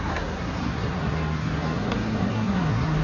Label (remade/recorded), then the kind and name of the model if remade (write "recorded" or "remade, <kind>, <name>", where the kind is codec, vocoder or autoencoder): remade, codec, SNAC